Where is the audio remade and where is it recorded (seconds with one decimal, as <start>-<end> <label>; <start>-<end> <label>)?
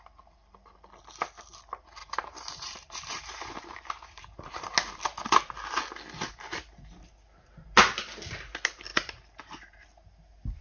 0.0-2.0 recorded; 2.0-4.5 remade; 4.5-8.9 recorded; 8.9-9.4 remade; 9.4-10.6 recorded